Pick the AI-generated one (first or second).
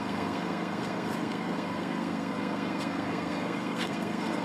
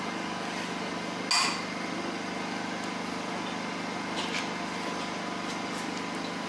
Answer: first